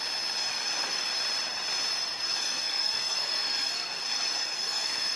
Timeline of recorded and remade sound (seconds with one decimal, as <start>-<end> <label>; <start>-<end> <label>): 0.0-0.5 recorded; 0.5-1.1 remade; 1.1-1.9 recorded; 1.9-5.2 remade